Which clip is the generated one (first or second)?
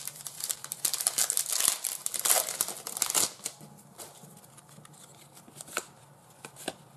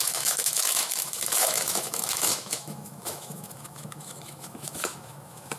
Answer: second